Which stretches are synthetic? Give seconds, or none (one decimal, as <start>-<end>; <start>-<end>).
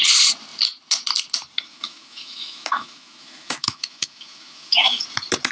1.7-5.0